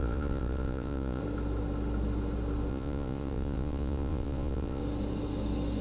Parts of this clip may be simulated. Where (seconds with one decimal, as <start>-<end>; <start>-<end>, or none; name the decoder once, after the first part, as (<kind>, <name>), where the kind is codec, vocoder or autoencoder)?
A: 0.0-1.2 (vocoder, Vocos); 2.7-4.8